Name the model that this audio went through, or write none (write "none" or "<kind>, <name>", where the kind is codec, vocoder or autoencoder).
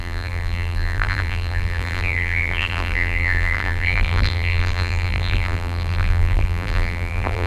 vocoder, BigVGAN v2